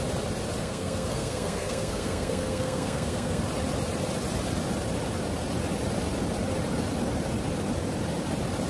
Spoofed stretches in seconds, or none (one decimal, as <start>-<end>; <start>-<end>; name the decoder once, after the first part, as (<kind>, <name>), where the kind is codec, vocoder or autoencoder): 0.6-3.4 (codec, SNAC)